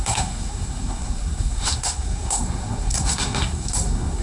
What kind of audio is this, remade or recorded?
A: remade